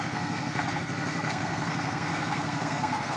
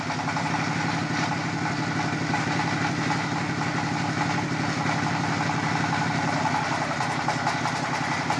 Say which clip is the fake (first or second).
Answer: first